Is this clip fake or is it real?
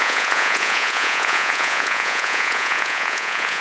fake